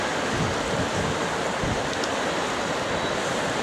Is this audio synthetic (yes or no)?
no